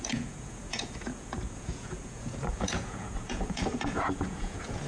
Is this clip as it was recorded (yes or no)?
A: no